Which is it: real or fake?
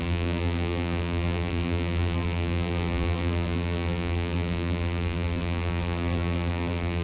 fake